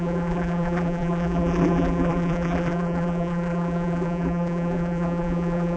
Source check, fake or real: fake